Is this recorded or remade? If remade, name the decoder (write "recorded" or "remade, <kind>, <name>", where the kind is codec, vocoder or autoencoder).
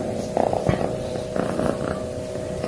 recorded